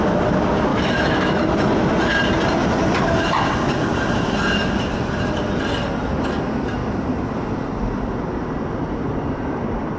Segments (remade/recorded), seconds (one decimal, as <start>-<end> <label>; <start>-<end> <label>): 0.0-0.7 recorded; 0.7-1.9 remade; 1.9-10.0 recorded